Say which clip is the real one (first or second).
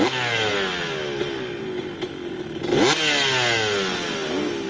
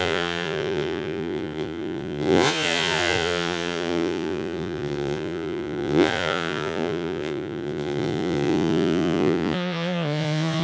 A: first